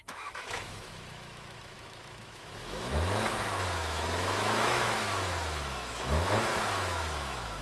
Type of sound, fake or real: fake